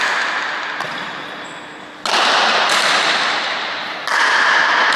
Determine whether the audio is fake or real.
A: real